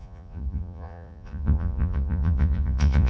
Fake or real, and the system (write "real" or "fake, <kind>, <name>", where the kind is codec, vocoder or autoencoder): fake, vocoder, Vocos